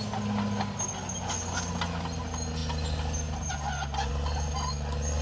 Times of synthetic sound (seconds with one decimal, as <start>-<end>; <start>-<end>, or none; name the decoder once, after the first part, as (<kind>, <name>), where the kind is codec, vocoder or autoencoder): none